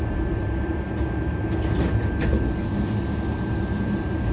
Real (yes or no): yes